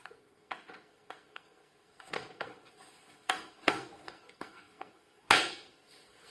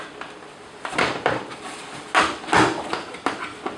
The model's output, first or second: first